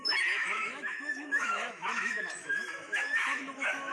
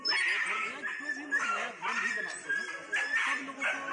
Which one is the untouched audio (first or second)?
second